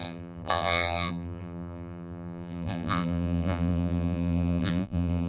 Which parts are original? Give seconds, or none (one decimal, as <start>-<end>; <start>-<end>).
none